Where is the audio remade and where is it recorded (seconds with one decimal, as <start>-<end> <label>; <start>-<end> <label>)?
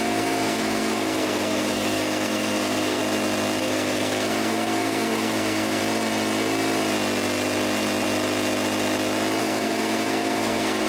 0.0-3.0 remade; 3.0-3.6 recorded; 3.6-5.8 remade; 5.8-9.4 recorded; 9.4-10.9 remade